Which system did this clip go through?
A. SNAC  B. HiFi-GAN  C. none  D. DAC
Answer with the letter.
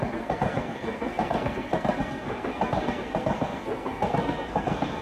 A